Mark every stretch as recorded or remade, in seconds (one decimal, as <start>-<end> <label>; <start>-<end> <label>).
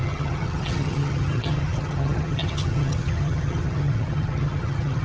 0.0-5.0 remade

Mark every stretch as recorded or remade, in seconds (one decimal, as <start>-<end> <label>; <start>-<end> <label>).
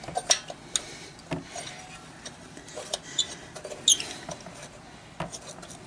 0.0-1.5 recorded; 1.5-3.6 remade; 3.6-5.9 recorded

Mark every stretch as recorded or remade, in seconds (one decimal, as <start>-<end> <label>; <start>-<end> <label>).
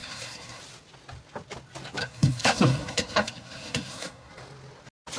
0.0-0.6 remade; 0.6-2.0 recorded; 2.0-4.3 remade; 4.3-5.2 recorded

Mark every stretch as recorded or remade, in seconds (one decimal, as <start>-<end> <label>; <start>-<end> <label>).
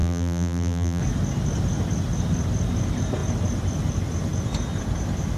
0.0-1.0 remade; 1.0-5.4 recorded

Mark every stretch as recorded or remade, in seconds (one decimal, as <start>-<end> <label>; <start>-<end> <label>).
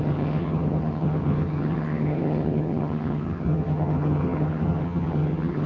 0.0-5.7 remade